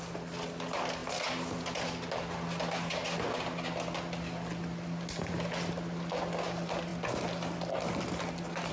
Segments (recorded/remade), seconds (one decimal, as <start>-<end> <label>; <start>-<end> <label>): 0.0-8.7 recorded